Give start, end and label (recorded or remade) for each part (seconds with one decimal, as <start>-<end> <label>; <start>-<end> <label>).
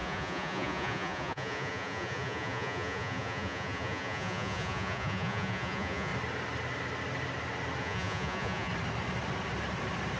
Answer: 0.0-6.1 remade; 6.1-7.8 recorded; 7.8-8.7 remade; 8.7-10.2 recorded